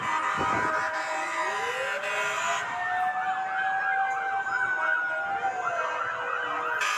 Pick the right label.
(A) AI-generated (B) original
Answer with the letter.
B